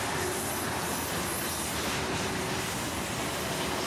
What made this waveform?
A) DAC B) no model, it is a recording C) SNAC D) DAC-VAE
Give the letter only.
B